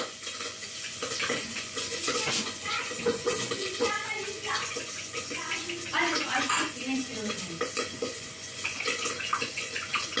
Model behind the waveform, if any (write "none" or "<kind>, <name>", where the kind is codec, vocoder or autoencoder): vocoder, Vocos